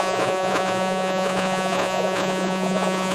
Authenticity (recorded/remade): remade